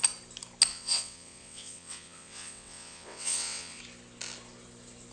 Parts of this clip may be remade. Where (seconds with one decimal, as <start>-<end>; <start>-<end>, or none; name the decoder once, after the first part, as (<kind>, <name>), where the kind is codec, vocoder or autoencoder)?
0.7-3.8 (vocoder, WaveNeXt)